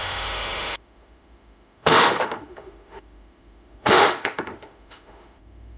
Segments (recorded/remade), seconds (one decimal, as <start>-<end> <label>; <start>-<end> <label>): 0.0-5.8 remade